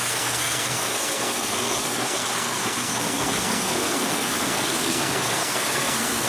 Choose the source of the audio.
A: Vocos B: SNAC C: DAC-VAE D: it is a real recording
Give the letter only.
B